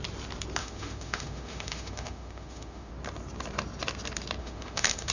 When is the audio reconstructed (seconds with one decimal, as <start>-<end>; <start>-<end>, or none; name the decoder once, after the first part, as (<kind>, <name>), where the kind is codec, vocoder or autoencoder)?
0.6-2.9 (autoencoder, DAC-VAE); 4.4-5.1